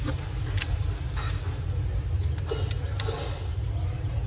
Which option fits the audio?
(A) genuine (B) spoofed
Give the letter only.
A